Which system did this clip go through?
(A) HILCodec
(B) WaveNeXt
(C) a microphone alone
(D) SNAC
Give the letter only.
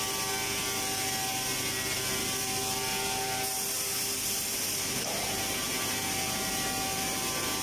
C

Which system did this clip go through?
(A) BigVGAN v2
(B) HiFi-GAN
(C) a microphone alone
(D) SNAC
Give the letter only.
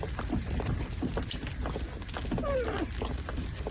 C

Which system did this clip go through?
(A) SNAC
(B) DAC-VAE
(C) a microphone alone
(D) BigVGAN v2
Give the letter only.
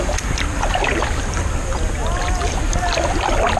C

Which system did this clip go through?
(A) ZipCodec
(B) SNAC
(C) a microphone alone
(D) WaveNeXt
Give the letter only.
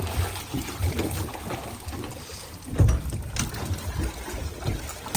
C